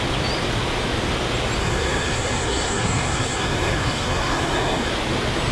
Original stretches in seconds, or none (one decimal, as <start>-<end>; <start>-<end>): 0.0-1.6; 4.9-5.5

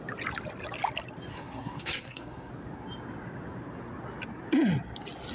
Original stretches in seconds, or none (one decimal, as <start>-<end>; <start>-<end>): 0.0-1.3; 2.5-5.3

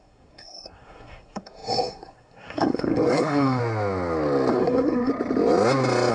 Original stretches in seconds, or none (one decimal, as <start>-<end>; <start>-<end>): 3.6-4.5; 5.1-6.1

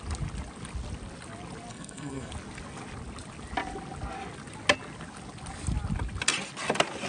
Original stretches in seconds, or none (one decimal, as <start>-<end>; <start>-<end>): 0.0-1.7; 2.3-7.1

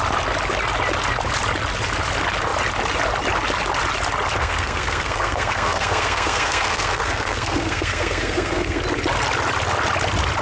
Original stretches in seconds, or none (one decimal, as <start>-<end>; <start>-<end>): 0.0-4.4; 8.8-10.4

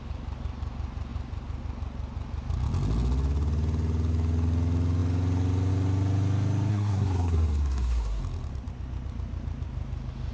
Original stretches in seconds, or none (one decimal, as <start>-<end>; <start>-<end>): 0.0-6.7; 8.2-10.3

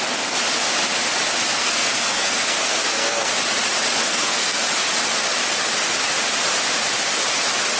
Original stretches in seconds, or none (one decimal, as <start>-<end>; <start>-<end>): 0.0-1.5; 3.3-4.0; 4.6-7.8